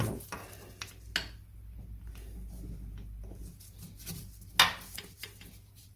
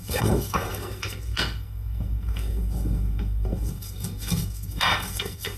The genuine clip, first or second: first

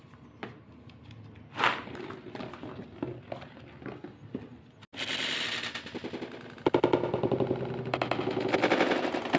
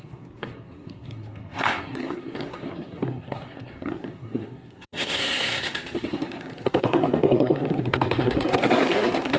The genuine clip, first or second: first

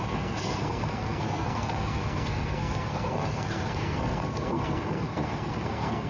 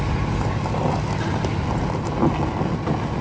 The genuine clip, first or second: second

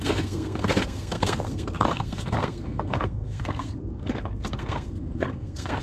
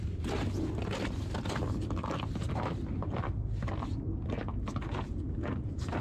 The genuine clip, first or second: second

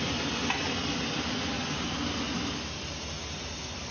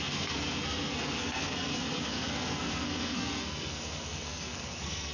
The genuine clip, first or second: first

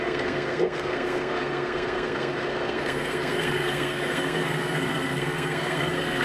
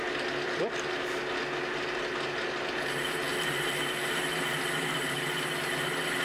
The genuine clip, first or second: second